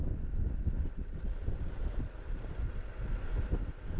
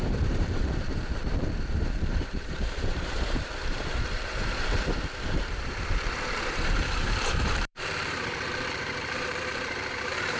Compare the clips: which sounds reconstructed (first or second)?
second